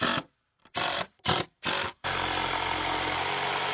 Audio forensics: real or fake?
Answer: fake